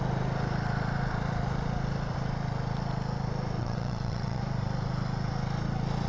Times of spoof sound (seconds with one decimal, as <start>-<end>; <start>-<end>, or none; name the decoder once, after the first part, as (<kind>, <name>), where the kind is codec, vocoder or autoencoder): 3.6-4.4 (vocoder, WaveNeXt)